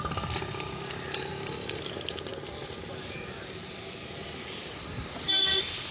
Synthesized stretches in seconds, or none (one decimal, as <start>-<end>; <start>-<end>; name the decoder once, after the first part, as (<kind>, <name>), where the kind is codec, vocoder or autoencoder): 1.3-1.8 (codec, DAC)